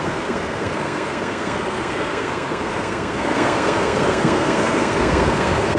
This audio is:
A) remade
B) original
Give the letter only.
A